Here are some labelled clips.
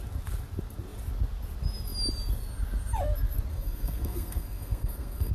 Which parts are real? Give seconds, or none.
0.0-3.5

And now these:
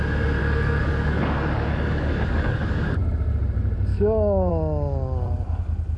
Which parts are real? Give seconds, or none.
0.0-0.4; 3.0-3.9; 4.5-6.0

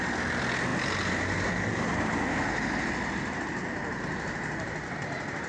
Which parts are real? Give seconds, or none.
0.0-5.5

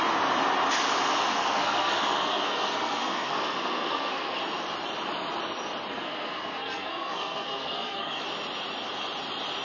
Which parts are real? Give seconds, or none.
0.0-1.3; 4.4-5.9; 8.2-9.6